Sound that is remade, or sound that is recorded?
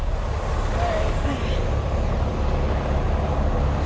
recorded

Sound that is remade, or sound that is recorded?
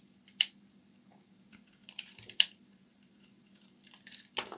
recorded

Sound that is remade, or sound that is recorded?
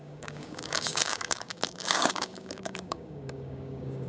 remade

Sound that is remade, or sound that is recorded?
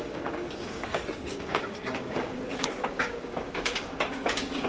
remade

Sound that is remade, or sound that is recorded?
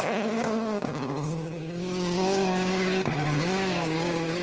remade